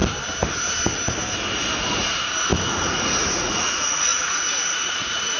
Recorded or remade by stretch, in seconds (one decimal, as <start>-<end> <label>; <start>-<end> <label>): 0.0-1.8 recorded; 1.8-5.4 remade